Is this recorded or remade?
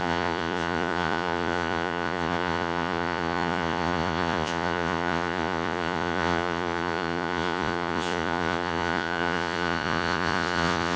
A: remade